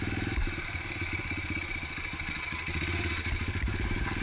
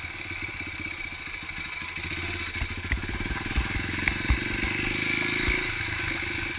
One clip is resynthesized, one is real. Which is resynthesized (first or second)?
first